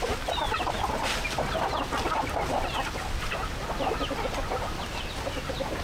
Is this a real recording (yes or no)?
yes